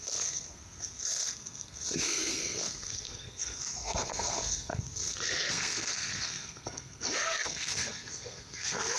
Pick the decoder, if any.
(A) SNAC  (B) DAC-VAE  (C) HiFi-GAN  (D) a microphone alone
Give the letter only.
A